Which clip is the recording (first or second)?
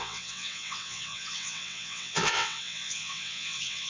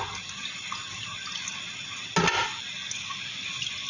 second